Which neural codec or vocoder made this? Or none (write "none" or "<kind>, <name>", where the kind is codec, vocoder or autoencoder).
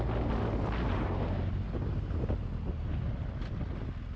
none